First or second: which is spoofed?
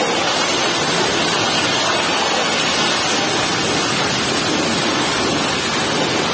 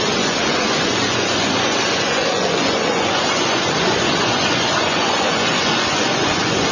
second